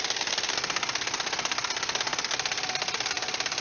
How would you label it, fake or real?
real